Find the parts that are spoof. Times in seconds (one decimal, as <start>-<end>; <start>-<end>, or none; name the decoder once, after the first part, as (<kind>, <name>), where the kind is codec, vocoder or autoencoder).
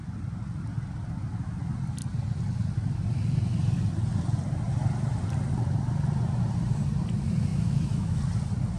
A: 7.5-8.2 (autoencoder, DAC-VAE)